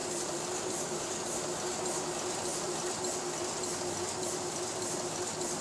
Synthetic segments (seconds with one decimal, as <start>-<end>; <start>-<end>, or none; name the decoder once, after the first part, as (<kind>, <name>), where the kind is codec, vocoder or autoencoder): 0.0-1.1 (vocoder, BigVGAN v2); 2.5-3.0